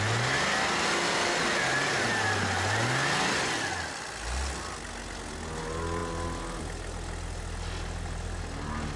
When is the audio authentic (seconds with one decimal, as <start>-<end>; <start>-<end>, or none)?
0.0-9.0